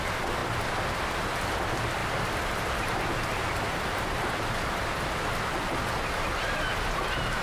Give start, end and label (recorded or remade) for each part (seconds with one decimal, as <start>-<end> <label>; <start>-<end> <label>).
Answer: 0.0-2.0 recorded; 2.0-4.4 remade; 4.4-7.4 recorded